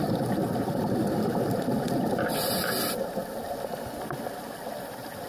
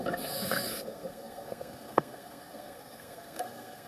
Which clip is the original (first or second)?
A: first